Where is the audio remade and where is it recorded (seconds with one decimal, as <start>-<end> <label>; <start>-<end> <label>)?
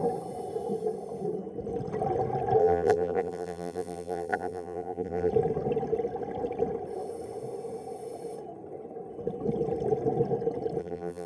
0.0-2.6 recorded; 2.6-5.3 remade; 5.3-10.8 recorded; 10.8-11.3 remade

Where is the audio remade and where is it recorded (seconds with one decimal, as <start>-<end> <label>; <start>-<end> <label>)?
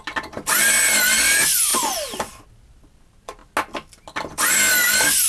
0.0-5.3 recorded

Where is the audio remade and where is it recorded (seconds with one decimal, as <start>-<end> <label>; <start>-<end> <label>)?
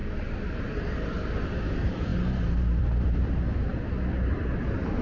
0.0-2.1 remade; 2.1-2.8 recorded; 2.8-3.7 remade; 3.7-4.6 recorded; 4.6-5.0 remade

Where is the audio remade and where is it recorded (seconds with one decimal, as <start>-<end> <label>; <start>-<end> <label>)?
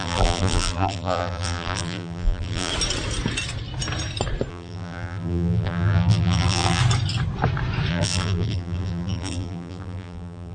0.0-2.7 remade; 2.7-4.5 recorded; 4.5-6.8 remade; 6.8-7.9 recorded; 7.9-10.5 remade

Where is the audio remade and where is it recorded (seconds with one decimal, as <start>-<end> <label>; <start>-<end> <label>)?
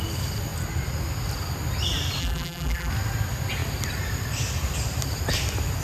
0.0-2.2 recorded; 2.2-2.9 remade; 2.9-5.8 recorded